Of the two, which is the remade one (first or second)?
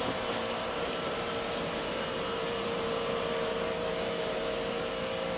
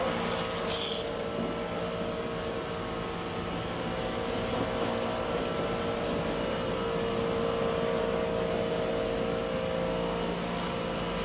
first